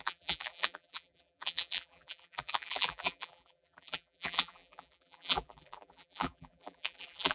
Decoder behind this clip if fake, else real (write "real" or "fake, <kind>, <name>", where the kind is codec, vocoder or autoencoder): fake, vocoder, BigVGAN v2